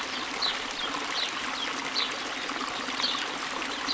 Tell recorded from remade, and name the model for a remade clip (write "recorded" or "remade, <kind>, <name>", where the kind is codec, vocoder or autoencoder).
recorded